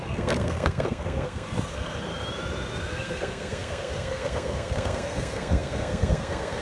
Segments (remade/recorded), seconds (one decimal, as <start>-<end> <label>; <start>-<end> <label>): 0.0-2.1 remade; 2.1-2.8 recorded; 2.8-6.6 remade